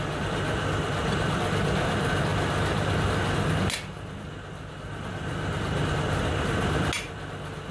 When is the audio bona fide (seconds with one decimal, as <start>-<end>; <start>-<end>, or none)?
0.0-7.7